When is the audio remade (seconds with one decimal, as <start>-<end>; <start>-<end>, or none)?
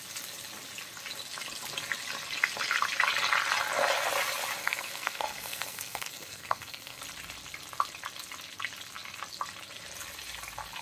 4.6-7.0